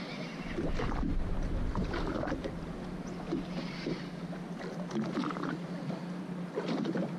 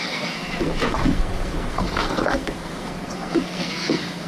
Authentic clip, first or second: first